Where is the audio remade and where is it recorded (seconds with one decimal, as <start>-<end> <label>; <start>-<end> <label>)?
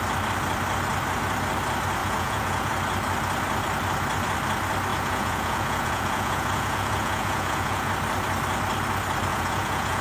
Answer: 0.0-2.0 recorded; 2.0-2.7 remade; 2.7-4.9 recorded; 4.9-7.9 remade; 7.9-9.3 recorded; 9.3-10.0 remade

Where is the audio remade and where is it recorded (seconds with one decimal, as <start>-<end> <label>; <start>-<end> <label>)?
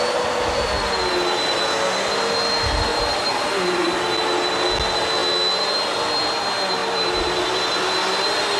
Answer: 0.0-2.9 recorded; 2.9-4.0 remade; 4.0-6.8 recorded; 6.8-7.3 remade; 7.3-8.6 recorded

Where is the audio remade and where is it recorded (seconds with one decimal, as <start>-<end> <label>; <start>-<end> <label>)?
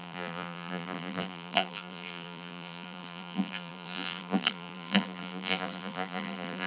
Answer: 0.0-6.7 remade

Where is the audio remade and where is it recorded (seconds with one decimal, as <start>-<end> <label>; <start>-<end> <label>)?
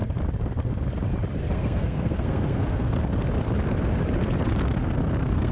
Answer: 0.0-1.4 recorded; 1.4-2.9 remade; 2.9-4.8 recorded; 4.8-5.5 remade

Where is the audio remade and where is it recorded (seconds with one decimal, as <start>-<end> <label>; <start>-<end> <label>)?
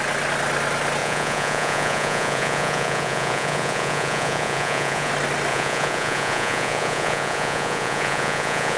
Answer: 0.0-1.0 recorded; 1.0-5.1 remade; 5.1-5.5 recorded; 5.5-8.8 remade